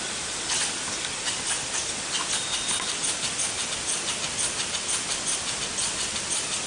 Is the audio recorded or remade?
recorded